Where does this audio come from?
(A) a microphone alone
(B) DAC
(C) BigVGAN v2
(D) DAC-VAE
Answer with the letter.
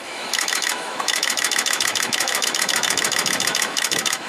D